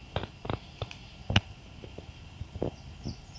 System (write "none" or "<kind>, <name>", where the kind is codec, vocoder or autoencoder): none